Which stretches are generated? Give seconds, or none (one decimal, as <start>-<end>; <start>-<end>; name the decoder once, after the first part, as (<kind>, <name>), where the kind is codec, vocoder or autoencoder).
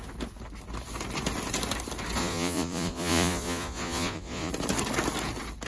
2.2-4.5 (vocoder, Vocos)